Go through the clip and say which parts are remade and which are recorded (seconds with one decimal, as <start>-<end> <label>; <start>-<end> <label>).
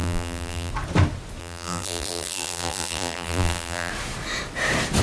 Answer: 0.0-0.7 remade; 0.7-1.4 recorded; 1.4-3.9 remade; 3.9-5.0 recorded